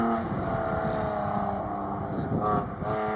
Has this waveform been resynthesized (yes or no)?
no